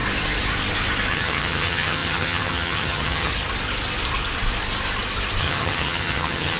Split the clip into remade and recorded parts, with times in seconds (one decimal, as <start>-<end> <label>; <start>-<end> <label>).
0.0-1.1 recorded; 1.1-3.3 remade; 3.3-5.4 recorded; 5.4-6.6 remade